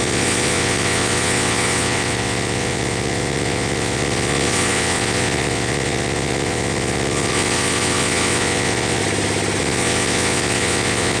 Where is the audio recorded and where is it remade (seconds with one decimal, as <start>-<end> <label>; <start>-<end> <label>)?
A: 0.0-9.0 remade; 9.0-9.6 recorded; 9.6-11.2 remade